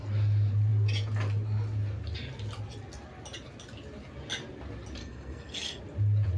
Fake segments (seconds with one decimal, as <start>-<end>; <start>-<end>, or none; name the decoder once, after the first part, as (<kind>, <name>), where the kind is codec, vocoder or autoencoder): 5.0-5.8 (codec, SNAC)